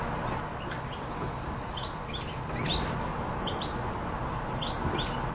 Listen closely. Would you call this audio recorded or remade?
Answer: recorded